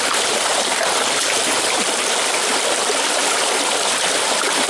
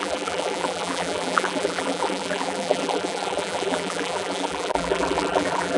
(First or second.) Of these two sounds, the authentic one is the first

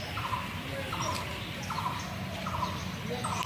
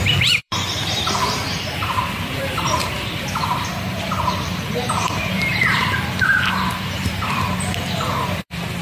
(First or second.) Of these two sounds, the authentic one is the first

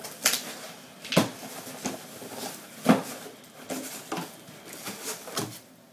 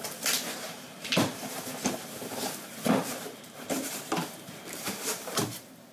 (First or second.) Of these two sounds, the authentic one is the first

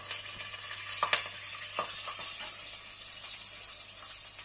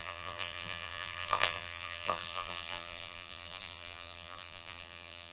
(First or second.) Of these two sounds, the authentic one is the first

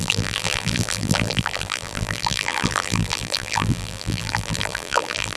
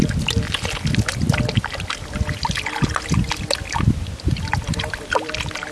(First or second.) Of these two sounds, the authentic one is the second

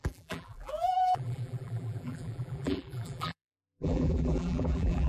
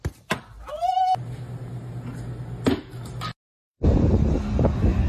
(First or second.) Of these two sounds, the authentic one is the second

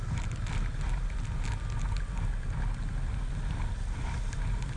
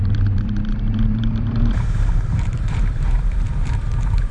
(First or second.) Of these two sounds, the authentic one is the first